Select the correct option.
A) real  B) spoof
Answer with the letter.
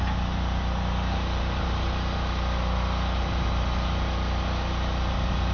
A